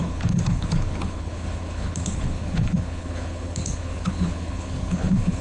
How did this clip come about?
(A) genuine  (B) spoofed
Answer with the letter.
B